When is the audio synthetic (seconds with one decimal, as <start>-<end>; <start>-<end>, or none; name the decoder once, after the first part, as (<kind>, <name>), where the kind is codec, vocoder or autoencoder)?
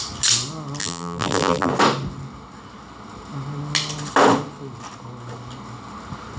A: 0.8-1.7 (vocoder, BigVGAN v2)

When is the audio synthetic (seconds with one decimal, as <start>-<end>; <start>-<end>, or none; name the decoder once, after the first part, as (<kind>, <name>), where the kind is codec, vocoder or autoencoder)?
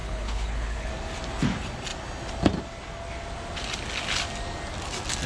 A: 0.0-0.9 (codec, HILCodec)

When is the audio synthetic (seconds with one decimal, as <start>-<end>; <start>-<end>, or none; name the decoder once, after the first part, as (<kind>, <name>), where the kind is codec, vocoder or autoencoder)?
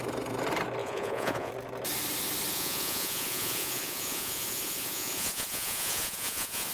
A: 0.8-1.5 (vocoder, Vocos); 2.5-6.7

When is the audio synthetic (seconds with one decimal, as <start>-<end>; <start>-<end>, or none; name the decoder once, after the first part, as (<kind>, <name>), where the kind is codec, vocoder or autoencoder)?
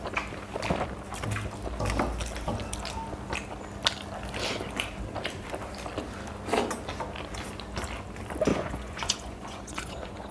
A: 8.5-10.3 (vocoder, Vocos)